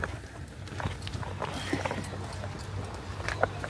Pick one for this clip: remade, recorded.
recorded